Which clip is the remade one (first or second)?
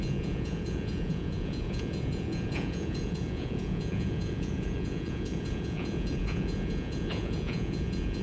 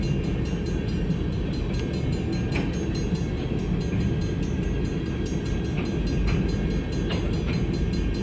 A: first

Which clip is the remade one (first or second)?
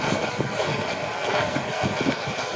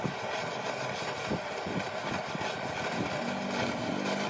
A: first